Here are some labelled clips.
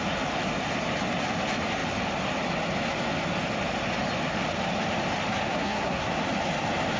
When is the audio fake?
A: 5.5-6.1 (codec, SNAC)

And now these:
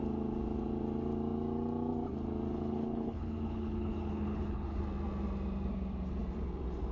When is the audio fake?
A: 2.5-4.8 (codec, HILCodec)

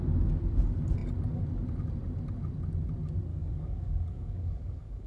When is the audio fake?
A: 3.3-5.1 (codec, DAC)

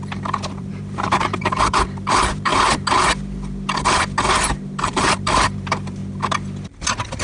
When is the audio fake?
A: 0.0-2.5 (vocoder, BigVGAN v2); 4.8-6.0

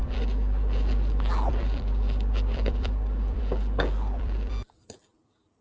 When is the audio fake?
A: 0.0-5.6 (vocoder, BigVGAN v2)

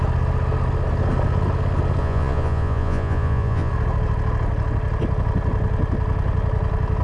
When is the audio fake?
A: 2.0-3.7 (vocoder, Vocos)

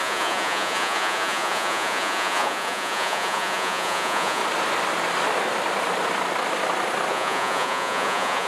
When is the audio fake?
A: 0.0-4.4 (vocoder, Vocos); 7.1-8.5